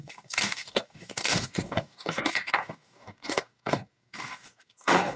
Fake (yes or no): yes